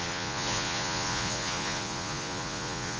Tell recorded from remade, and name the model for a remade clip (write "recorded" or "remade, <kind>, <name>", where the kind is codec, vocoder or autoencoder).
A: remade, vocoder, Vocos